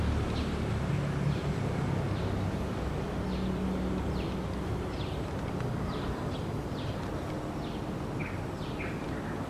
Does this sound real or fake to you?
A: real